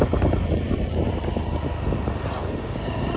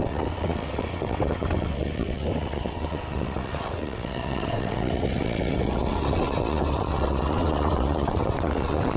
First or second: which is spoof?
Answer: second